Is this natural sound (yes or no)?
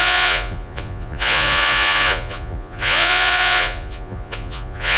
no